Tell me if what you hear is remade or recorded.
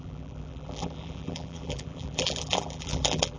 remade